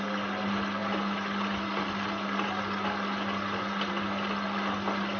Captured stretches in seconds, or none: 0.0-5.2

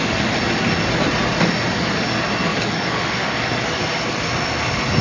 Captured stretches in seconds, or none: 0.0-2.5; 3.4-5.0